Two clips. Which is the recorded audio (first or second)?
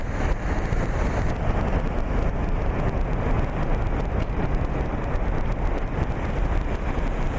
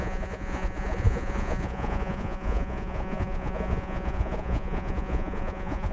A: first